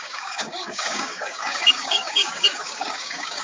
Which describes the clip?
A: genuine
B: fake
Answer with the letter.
B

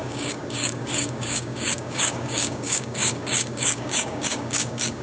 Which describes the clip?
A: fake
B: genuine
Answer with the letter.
A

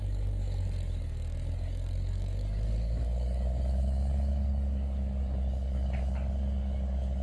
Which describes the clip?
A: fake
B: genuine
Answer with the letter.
A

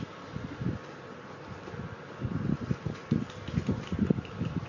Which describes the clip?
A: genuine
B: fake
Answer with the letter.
A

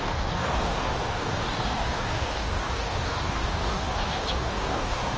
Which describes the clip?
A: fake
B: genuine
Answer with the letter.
A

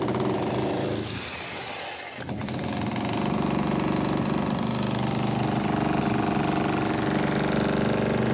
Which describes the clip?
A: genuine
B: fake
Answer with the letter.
A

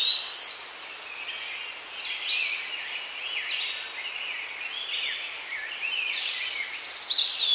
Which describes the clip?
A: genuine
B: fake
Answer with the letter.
A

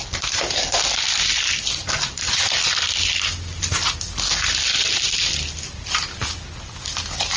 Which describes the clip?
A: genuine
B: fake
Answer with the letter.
A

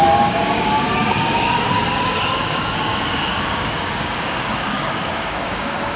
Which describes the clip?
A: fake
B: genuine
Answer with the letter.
A